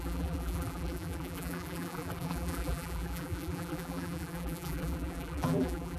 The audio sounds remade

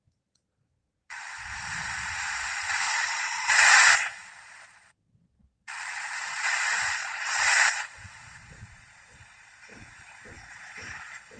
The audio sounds remade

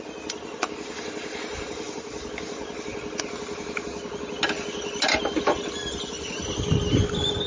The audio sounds recorded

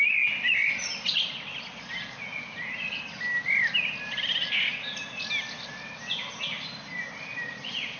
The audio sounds recorded